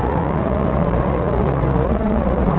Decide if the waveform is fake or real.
fake